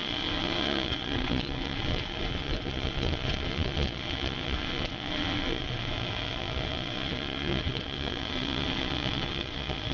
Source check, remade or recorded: remade